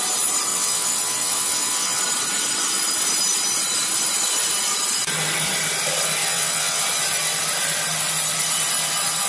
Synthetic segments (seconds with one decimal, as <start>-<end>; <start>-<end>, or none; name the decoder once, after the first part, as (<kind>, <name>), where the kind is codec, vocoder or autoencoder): 0.5-2.0 (vocoder, WaveNeXt); 6.2-6.8